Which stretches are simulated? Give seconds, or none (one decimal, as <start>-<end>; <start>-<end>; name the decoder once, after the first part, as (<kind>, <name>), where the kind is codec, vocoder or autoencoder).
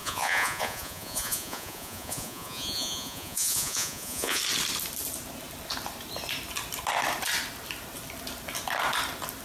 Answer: 0.0-4.4 (vocoder, Vocos)